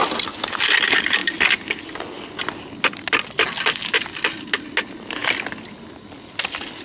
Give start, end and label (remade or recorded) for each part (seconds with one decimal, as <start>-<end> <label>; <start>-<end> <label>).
0.0-6.8 recorded